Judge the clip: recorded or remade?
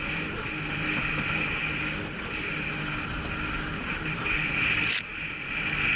recorded